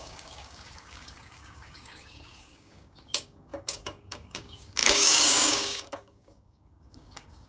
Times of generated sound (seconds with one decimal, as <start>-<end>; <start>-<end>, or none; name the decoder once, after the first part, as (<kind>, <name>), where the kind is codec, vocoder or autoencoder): 0.0-7.5 (codec, DAC)